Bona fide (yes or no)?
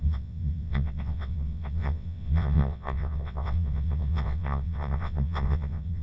no